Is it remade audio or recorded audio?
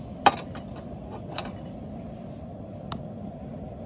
recorded